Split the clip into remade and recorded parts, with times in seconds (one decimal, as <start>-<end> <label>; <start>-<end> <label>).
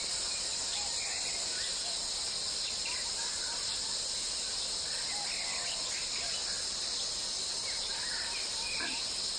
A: 0.0-9.4 recorded